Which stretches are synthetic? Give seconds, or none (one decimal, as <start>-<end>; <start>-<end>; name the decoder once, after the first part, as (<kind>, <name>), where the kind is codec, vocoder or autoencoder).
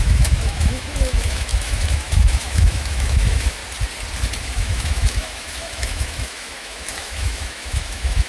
0.0-3.6 (autoencoder, DAC-VAE); 4.4-8.3